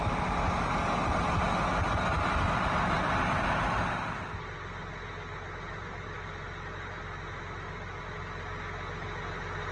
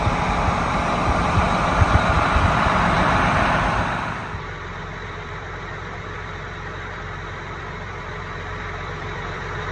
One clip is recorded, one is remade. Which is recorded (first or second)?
first